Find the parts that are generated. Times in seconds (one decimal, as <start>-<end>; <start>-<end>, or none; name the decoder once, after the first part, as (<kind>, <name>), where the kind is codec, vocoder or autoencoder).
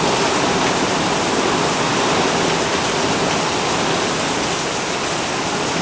none